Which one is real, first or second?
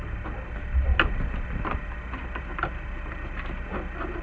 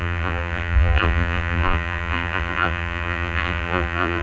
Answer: first